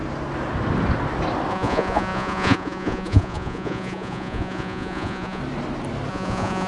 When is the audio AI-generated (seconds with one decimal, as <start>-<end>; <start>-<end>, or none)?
1.5-5.4; 6.1-6.7